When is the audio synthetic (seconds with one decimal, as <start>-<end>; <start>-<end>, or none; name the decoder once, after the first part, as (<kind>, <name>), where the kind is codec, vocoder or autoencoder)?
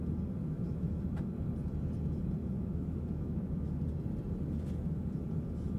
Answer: 0.4-1.0 (autoencoder, DAC-VAE); 2.4-3.8